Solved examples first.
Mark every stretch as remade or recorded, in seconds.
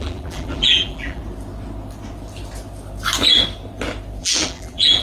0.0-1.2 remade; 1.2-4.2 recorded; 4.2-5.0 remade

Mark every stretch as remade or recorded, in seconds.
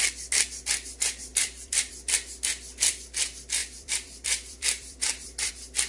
0.0-1.3 recorded; 1.3-1.9 remade; 1.9-3.6 recorded; 3.6-5.5 remade; 5.5-5.9 recorded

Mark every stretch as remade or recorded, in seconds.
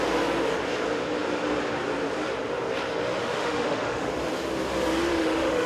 0.0-3.2 recorded; 3.2-4.1 remade; 4.1-5.1 recorded; 5.1-5.7 remade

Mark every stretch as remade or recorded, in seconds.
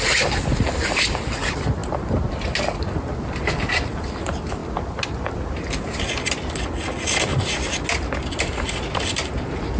0.0-9.8 recorded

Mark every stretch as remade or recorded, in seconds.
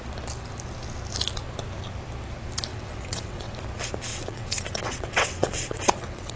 0.0-2.7 recorded; 2.7-3.5 remade; 3.5-4.1 recorded; 4.1-6.4 remade